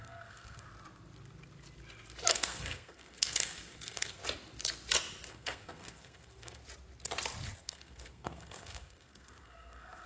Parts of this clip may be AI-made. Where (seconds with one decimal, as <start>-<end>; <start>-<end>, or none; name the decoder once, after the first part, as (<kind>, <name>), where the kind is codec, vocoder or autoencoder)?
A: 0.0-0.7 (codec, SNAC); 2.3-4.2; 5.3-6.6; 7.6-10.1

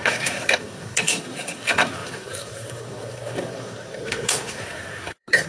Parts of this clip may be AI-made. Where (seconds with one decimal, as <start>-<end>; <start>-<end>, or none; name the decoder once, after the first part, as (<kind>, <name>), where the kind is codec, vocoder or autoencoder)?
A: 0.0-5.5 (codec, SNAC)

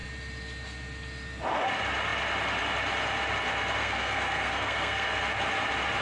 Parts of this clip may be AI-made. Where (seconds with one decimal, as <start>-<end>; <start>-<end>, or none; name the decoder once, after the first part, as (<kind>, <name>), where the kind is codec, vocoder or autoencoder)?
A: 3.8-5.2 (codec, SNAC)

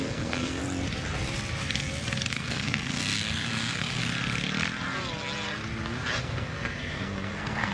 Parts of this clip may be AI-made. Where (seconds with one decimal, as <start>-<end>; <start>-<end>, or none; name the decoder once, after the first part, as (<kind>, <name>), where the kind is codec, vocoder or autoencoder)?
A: 0.0-0.6 (codec, SNAC); 2.3-4.0; 6.2-7.7